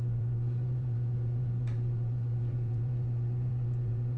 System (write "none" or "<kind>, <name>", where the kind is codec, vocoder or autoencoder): vocoder, Vocos